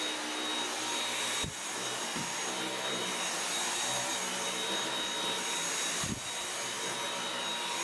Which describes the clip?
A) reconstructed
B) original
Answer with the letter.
B